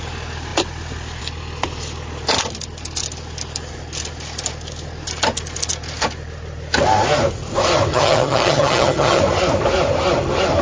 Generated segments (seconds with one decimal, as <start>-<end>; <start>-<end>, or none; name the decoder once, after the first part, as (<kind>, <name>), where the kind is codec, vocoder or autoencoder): 7.9-9.2 (vocoder, HiFi-GAN)